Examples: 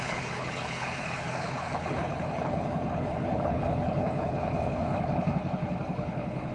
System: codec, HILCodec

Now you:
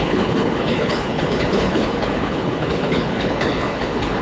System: codec, HILCodec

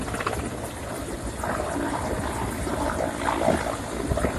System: vocoder, BigVGAN v2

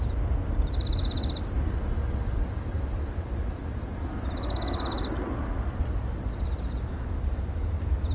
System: none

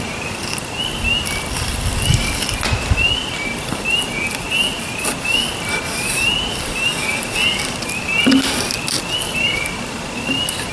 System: none